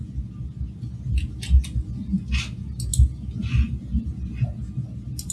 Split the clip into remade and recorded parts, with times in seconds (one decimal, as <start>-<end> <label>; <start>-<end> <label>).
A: 0.0-5.3 recorded